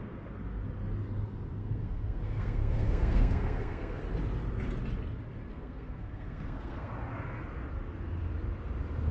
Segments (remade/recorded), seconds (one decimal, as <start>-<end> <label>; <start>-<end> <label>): 0.0-1.6 recorded; 1.6-4.0 remade; 4.0-5.5 recorded; 5.5-6.9 remade; 6.9-9.1 recorded